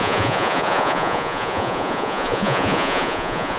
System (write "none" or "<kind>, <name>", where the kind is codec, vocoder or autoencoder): vocoder, Vocos